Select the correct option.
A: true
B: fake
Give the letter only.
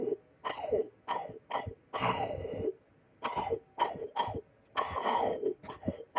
A